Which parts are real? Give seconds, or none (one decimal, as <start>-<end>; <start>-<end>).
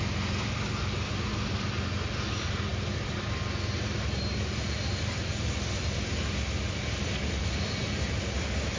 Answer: 0.0-8.8